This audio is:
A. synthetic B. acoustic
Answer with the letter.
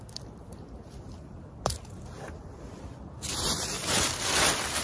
A